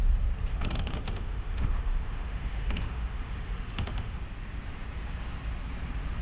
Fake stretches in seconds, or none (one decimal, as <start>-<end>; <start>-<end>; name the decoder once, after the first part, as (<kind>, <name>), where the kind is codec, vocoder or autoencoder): 0.5-4.2 (autoencoder, DAC-VAE)